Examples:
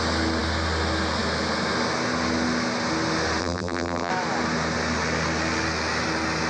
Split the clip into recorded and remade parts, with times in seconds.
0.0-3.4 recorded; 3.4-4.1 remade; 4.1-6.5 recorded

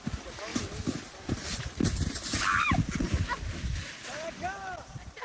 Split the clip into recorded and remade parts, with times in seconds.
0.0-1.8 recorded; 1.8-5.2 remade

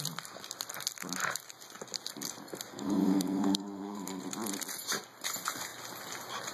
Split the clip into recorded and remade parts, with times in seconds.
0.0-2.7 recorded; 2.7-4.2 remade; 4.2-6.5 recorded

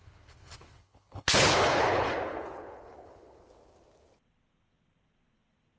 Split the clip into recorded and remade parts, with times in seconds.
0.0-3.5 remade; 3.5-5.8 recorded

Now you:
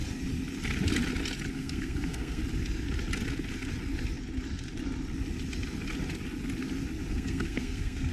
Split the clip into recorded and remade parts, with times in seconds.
0.0-1.5 recorded; 1.5-2.4 remade; 2.4-7.1 recorded; 7.1-8.1 remade

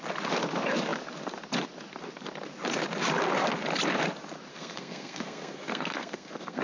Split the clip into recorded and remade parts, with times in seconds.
0.0-4.5 recorded; 4.5-6.6 remade

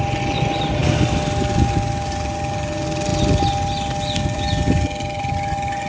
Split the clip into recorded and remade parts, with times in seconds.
0.0-5.9 recorded